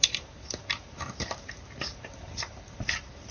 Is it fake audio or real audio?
fake